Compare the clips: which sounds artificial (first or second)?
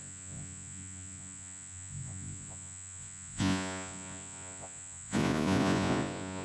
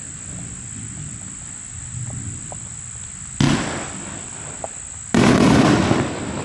first